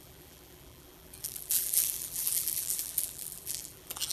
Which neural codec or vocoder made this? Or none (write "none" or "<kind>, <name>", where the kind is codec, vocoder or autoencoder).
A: vocoder, BigVGAN v2